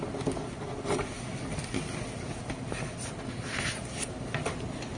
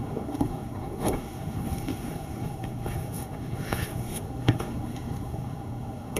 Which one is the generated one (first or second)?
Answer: second